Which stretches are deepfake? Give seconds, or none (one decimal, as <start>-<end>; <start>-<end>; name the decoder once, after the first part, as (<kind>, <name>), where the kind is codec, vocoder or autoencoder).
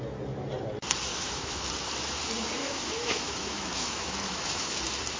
1.1-1.6 (autoencoder, DAC-VAE); 2.6-4.8